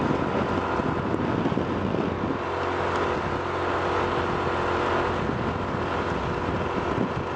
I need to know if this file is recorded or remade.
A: recorded